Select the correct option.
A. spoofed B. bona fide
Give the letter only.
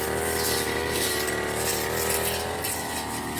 B